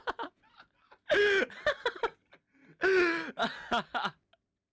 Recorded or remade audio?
recorded